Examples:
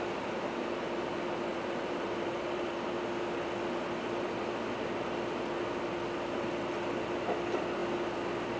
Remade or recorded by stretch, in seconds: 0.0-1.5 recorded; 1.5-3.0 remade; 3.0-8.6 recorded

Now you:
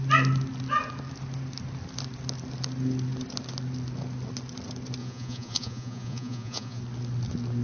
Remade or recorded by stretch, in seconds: 0.0-5.0 recorded; 5.0-6.8 remade; 6.8-7.6 recorded

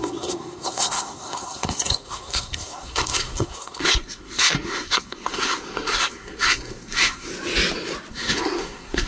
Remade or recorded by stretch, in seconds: 0.0-7.3 remade; 7.3-8.1 recorded; 8.1-9.1 remade